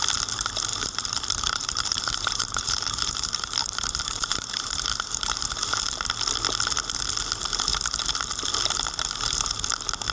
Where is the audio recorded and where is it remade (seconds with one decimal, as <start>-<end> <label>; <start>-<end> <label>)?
0.0-0.7 recorded; 0.7-5.4 remade; 5.4-10.1 recorded